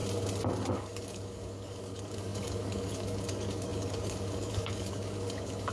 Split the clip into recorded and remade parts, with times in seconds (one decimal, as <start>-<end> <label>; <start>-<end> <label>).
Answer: 0.0-0.7 recorded; 0.7-5.7 remade